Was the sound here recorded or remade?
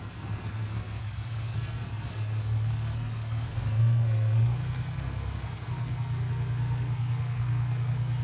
remade